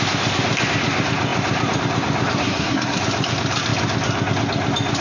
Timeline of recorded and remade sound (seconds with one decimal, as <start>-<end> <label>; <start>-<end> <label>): 0.0-2.4 recorded; 2.4-3.0 remade; 3.0-5.0 recorded